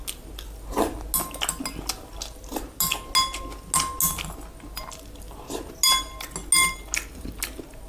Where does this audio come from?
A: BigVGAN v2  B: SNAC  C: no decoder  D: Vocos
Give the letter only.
C